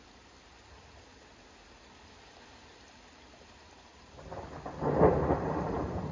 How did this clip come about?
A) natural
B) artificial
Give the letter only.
A